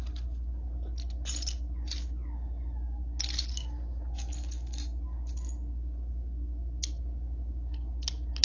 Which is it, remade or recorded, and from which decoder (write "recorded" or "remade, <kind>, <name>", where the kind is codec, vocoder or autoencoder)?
recorded